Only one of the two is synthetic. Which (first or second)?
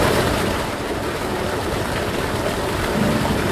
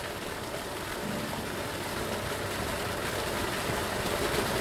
first